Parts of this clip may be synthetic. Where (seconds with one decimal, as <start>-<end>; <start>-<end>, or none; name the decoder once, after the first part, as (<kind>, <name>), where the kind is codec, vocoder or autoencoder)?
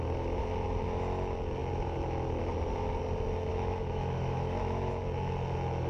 3.5-4.9 (autoencoder, DAC-VAE)